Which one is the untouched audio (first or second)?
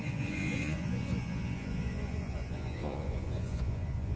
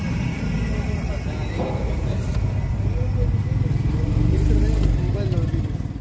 second